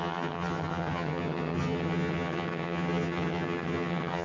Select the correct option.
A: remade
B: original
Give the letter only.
A